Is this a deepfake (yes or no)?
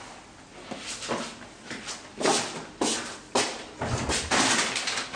no